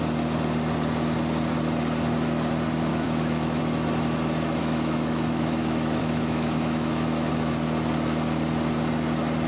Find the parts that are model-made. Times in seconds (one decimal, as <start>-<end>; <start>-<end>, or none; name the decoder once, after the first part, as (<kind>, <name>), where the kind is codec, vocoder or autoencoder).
2.9-3.6 (autoencoder, DAC-VAE); 4.6-7.3